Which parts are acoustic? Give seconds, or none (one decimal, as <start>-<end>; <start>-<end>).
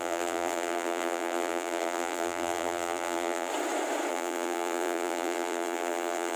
3.5-4.1